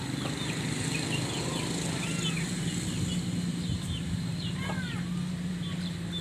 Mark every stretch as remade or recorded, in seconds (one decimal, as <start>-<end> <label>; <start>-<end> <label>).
0.0-6.2 recorded